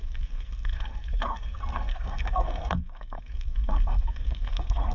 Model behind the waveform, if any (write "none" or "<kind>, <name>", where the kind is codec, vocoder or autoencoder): codec, SNAC